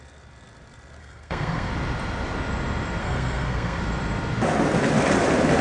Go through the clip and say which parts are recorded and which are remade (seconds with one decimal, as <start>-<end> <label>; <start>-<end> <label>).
0.0-1.0 recorded; 1.0-1.7 remade; 1.7-3.0 recorded; 3.0-3.8 remade; 3.8-5.6 recorded